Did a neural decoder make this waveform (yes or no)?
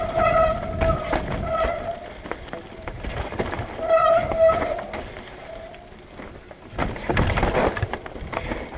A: no